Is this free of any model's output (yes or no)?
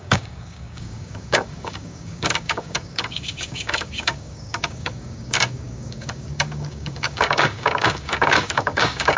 no